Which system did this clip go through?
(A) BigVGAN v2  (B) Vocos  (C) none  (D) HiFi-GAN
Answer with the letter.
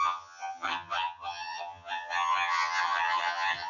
D